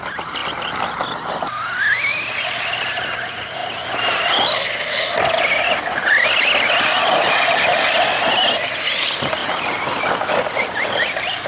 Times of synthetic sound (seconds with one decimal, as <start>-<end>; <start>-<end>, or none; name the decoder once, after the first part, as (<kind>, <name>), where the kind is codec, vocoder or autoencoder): none

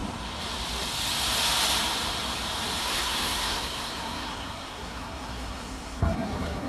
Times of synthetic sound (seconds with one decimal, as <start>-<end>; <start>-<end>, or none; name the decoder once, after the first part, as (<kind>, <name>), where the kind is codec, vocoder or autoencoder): 2.8-6.7 (codec, SNAC)

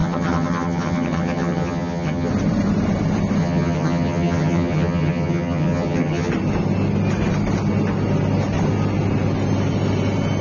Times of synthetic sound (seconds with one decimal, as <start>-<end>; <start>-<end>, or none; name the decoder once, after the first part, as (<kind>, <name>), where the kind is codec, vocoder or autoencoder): 0.0-2.3 (vocoder, HiFi-GAN); 3.4-6.3

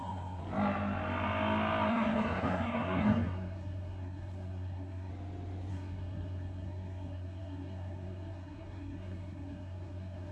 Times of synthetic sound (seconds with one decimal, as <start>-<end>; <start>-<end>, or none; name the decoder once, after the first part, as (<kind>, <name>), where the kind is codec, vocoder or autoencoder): 0.0-0.4 (codec, SNAC); 1.9-5.1; 5.7-10.3

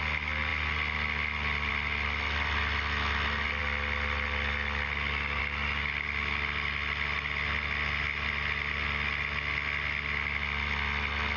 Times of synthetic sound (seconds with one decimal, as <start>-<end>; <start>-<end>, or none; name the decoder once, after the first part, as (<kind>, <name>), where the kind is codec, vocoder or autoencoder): none

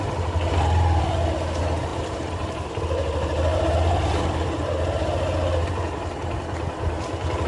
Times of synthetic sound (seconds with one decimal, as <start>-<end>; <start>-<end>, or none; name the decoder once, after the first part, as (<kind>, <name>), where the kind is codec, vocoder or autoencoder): 1.9-2.8 (vocoder, BigVGAN v2)

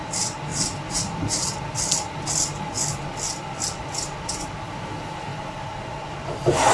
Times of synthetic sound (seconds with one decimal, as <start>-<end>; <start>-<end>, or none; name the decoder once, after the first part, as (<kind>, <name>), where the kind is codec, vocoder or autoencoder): none

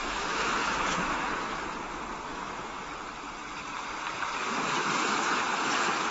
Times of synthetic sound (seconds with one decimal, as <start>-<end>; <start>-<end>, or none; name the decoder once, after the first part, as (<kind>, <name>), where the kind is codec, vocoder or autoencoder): 0.0-1.6 (autoencoder, DAC-VAE); 2.3-2.9